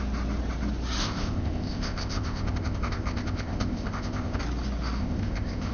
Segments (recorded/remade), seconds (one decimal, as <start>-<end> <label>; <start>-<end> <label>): 0.0-1.0 recorded; 1.0-4.4 remade; 4.4-5.0 recorded; 5.0-5.7 remade